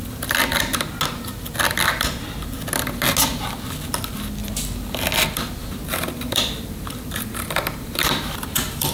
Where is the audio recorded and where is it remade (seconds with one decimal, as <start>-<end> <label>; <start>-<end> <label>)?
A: 0.0-0.7 remade; 0.7-4.4 recorded; 4.4-8.9 remade